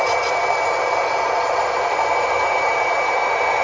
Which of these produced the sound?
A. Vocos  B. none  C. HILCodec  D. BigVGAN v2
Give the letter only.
D